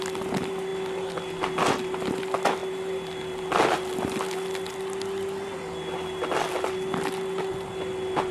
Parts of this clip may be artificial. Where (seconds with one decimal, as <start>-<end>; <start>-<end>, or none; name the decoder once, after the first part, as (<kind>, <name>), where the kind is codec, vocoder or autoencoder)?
none

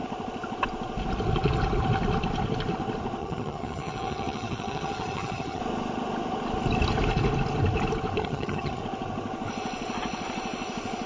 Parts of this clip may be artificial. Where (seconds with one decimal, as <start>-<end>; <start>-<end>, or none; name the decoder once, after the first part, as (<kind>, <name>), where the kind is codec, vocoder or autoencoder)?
3.2-5.6 (vocoder, HiFi-GAN); 8.2-8.8

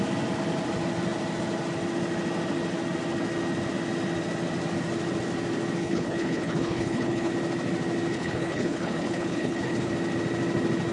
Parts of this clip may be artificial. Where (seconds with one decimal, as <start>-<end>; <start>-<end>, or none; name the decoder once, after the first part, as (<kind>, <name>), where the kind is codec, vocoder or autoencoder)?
5.8-7.3 (codec, HILCodec); 8.1-9.9

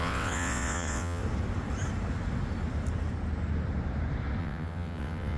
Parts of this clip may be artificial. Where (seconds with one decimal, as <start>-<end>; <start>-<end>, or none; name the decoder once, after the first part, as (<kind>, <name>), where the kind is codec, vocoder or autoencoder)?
0.0-1.2 (vocoder, WaveNeXt); 4.4-5.4

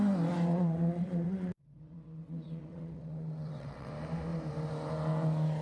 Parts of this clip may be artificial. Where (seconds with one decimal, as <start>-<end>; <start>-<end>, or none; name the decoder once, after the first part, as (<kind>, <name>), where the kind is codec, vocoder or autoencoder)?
0.5-3.9 (vocoder, WaveNeXt)